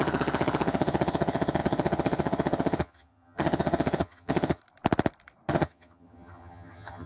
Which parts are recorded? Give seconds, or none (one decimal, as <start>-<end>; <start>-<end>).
4.6-5.5